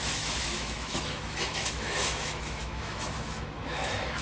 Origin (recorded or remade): remade